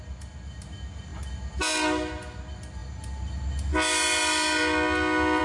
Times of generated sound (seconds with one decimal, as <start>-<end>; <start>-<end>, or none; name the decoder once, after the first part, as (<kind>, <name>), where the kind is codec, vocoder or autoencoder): none